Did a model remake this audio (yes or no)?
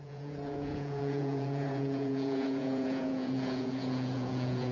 yes